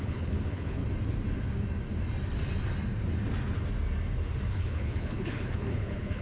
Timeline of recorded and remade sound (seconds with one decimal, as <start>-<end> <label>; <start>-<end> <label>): 0.0-0.8 remade; 0.8-4.5 recorded; 4.5-6.2 remade